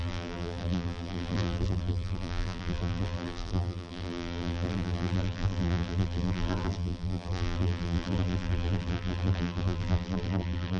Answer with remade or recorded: remade